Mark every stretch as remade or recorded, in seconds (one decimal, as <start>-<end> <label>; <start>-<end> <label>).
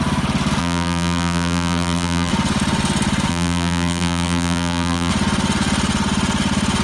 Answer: 0.0-0.6 recorded; 0.6-2.3 remade; 2.3-3.3 recorded; 3.3-5.1 remade; 5.1-6.8 recorded